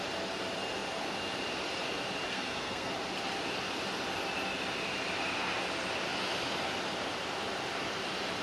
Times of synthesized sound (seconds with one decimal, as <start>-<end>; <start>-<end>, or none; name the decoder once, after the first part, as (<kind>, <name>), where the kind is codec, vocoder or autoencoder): 2.3-2.9 (codec, SNAC)